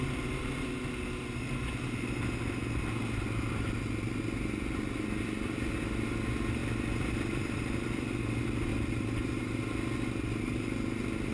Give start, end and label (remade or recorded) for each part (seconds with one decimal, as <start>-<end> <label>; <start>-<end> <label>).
0.0-6.6 recorded; 6.6-8.2 remade; 8.2-8.7 recorded; 8.7-9.4 remade; 9.4-11.3 recorded